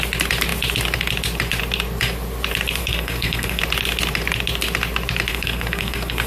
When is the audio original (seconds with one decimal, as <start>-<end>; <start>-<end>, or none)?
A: 0.0-2.8; 3.6-5.3

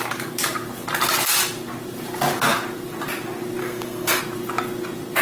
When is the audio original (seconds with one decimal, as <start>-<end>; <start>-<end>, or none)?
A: 0.0-3.6; 4.2-5.2

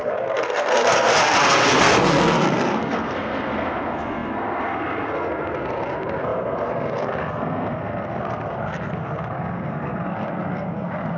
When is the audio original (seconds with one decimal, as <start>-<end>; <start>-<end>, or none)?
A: 1.1-1.8

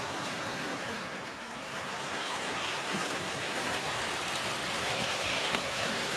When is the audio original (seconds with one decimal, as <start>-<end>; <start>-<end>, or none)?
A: 4.0-4.8

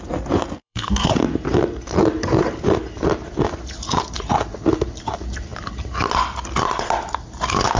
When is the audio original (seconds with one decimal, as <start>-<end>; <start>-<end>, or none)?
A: 0.0-0.6; 1.1-7.8

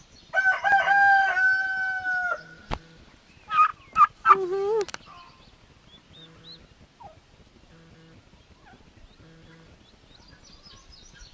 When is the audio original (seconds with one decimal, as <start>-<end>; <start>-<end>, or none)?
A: 0.0-11.3

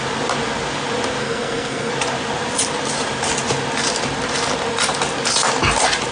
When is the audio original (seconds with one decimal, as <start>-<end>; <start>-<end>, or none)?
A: 0.0-1.2; 1.9-6.1

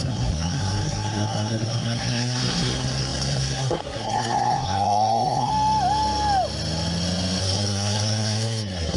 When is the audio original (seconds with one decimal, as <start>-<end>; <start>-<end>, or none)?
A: 5.5-7.4